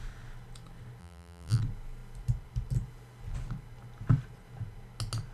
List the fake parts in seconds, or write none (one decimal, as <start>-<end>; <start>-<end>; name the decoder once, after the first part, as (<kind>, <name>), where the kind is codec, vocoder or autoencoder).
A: 1.0-1.6 (vocoder, BigVGAN v2)